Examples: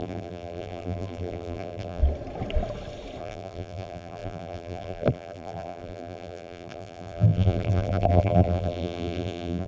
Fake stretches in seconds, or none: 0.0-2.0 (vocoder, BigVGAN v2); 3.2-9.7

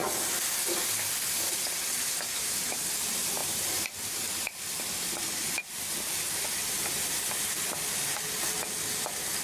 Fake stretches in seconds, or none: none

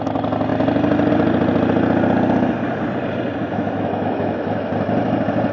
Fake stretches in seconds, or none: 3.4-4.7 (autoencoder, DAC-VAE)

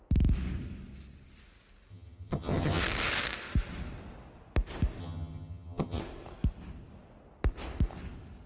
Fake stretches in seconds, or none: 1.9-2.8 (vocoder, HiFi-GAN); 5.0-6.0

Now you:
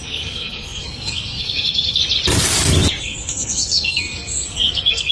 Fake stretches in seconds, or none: 0.0-2.0 (codec, SNAC); 3.0-5.1

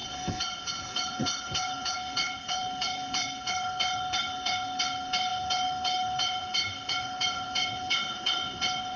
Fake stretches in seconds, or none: 0.0-9.0 (codec, HILCodec)

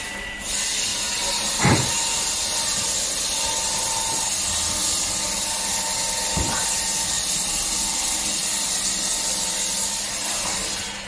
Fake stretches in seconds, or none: 0.0-8.4 (vocoder, BigVGAN v2); 10.1-11.1